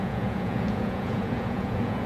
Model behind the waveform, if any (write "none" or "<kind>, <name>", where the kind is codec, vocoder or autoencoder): vocoder, Vocos